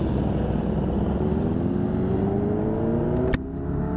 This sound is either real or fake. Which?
real